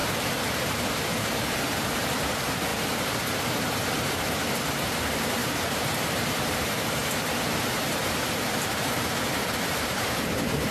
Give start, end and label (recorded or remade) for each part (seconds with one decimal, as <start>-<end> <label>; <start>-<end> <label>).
0.0-0.6 recorded; 0.6-10.7 remade